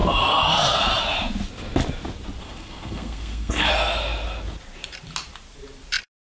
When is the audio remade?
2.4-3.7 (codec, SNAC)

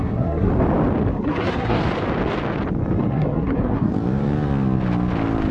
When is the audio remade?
0.0-0.5 (codec, SNAC); 1.1-1.8; 3.0-3.9

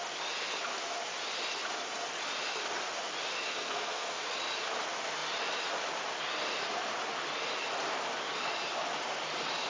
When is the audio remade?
3.5-4.2 (codec, SNAC)

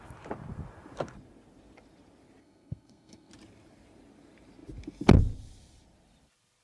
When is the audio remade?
2.4-3.3 (codec, SNAC)

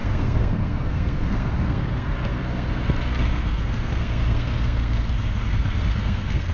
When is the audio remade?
0.0-6.5 (codec, SNAC)

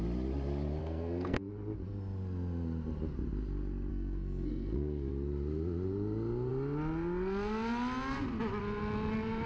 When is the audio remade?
0.8-1.5 (codec, SNAC); 3.9-5.1

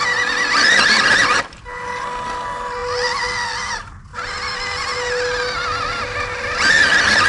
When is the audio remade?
none